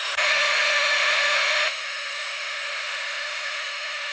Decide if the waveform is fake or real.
fake